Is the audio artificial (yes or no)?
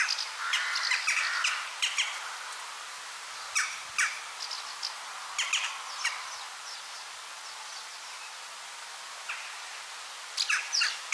no